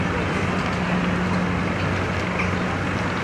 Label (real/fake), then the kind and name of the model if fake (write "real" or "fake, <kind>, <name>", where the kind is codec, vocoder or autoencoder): real